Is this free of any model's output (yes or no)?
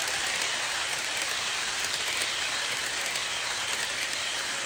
yes